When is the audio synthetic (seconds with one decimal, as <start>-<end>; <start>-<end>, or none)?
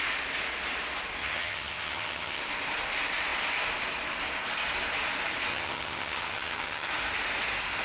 1.2-2.4; 5.5-6.9